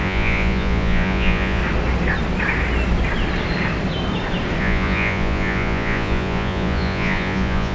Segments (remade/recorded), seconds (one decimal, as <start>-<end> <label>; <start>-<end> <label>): 0.0-1.6 remade; 1.6-4.6 recorded; 4.6-7.7 remade